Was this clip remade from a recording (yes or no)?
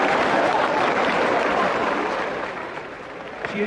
yes